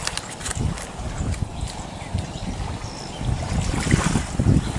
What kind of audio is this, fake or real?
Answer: real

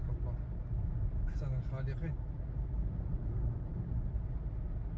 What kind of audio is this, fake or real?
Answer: real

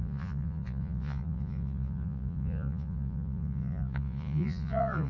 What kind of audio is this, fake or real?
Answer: fake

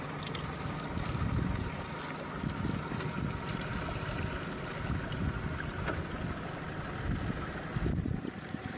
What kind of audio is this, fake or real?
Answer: real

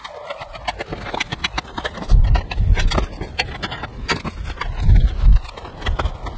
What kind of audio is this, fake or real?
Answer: real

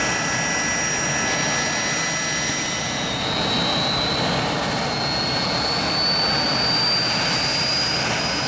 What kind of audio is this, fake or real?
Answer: real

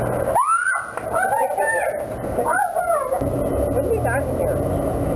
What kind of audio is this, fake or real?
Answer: real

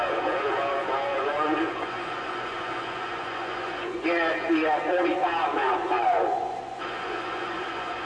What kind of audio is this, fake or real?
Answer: fake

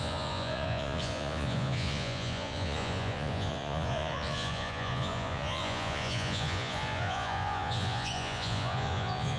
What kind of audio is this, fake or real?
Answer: fake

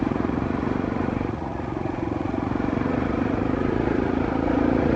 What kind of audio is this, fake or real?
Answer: fake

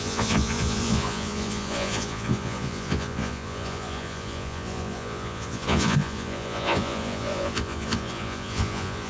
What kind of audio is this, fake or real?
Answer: fake